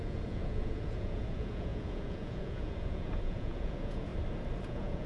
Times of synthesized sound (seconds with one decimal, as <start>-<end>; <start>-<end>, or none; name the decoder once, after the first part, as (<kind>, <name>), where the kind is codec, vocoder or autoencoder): 0.0-4.1 (vocoder, Vocos); 4.6-5.1